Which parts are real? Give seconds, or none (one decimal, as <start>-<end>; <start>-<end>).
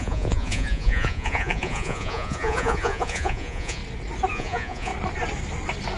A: 3.8-4.3; 4.9-6.0